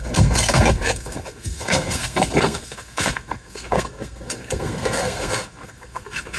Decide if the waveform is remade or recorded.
remade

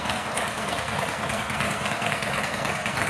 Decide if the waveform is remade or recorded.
remade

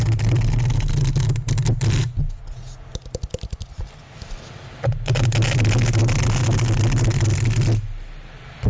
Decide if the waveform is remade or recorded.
recorded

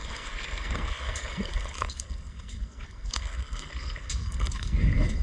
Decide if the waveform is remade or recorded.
remade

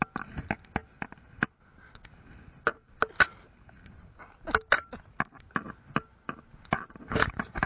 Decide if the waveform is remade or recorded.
recorded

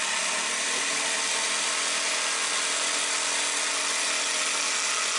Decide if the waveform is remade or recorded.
recorded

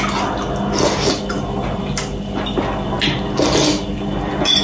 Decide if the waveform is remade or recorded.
recorded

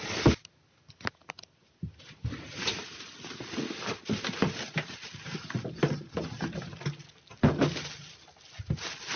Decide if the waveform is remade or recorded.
recorded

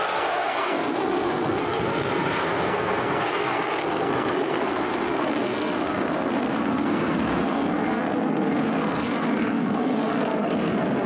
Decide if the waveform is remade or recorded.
remade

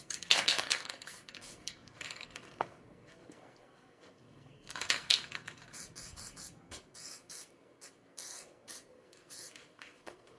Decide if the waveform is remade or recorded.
remade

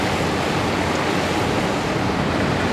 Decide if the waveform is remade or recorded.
recorded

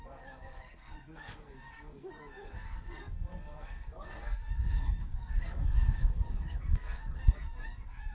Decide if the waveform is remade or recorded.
remade